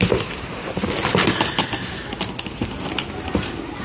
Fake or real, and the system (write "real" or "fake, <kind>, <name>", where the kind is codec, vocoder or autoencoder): real